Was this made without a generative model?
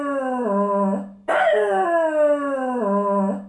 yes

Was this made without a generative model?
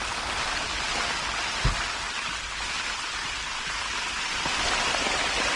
yes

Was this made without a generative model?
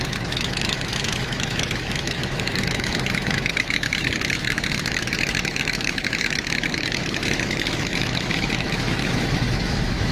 no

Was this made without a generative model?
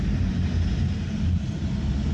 yes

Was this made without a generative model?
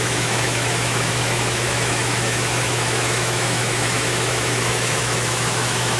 no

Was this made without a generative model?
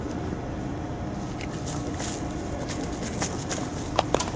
yes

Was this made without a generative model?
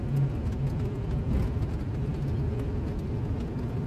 yes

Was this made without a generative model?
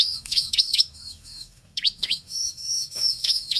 no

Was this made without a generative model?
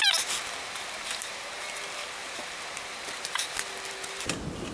yes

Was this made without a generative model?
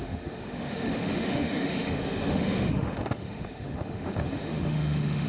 no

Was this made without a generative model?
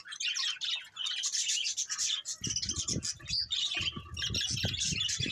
yes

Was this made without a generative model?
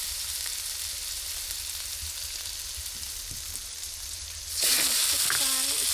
yes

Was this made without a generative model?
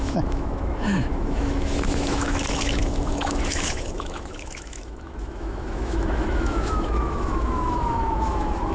no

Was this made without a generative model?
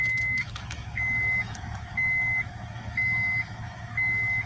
no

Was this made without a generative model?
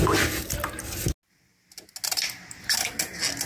yes